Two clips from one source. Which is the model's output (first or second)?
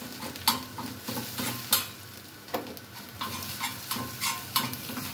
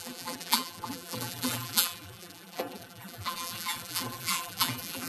second